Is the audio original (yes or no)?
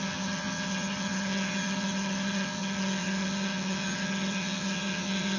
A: no